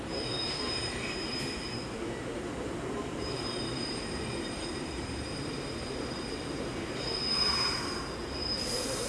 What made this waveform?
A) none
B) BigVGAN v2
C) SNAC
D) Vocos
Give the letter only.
B